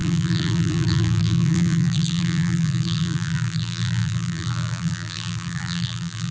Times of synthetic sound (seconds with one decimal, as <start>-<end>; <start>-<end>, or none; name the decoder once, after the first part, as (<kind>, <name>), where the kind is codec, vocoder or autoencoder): 0.0-6.3 (vocoder, BigVGAN v2)